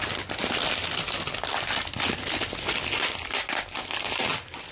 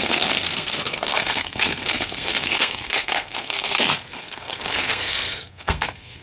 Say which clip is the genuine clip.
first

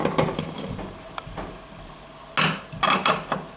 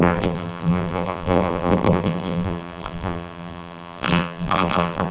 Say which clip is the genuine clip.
first